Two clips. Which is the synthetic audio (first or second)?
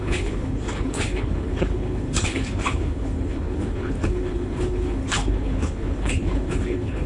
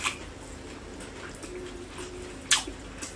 first